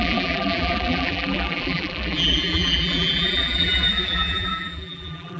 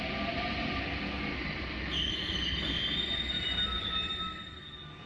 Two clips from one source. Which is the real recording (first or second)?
second